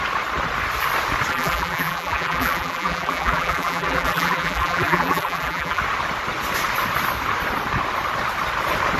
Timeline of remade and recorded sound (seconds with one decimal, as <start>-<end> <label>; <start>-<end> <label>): 0.0-1.3 recorded; 1.3-5.8 remade; 5.8-9.0 recorded